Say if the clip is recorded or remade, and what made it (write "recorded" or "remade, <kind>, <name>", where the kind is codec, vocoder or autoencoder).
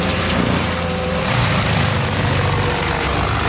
remade, vocoder, BigVGAN v2